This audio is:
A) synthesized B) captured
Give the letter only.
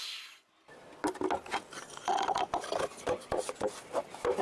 B